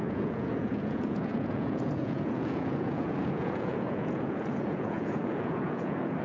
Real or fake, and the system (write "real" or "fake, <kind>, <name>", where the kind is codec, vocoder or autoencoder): fake, vocoder, Vocos